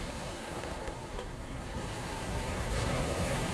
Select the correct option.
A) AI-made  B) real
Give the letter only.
A